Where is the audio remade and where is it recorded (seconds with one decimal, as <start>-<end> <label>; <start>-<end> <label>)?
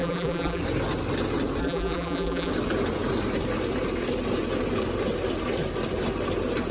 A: 0.0-0.6 remade; 0.6-1.6 recorded; 1.6-2.5 remade; 2.5-6.7 recorded